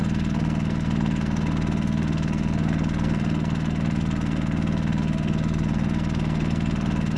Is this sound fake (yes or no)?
yes